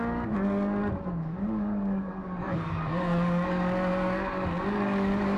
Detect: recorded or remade remade